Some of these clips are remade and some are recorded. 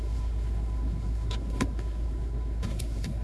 remade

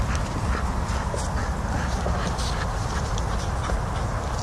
recorded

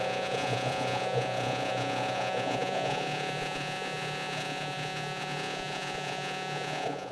remade